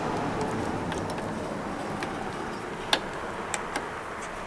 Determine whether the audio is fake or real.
real